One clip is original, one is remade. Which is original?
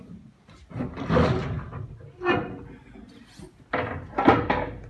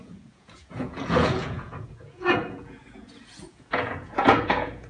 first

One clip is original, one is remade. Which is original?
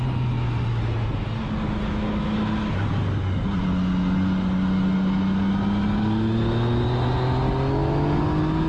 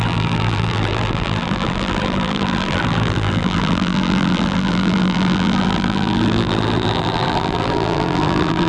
first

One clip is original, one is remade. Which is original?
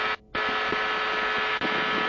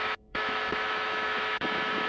first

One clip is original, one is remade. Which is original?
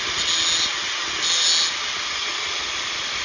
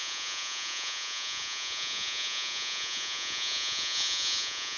first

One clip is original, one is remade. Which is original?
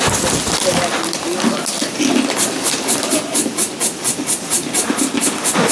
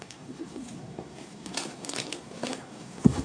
first